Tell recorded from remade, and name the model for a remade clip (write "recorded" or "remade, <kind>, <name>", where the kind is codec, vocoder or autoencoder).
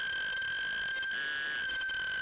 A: recorded